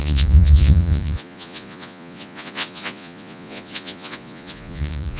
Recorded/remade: remade